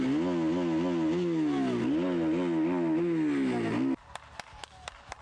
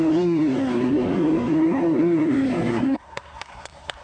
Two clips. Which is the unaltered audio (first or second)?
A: first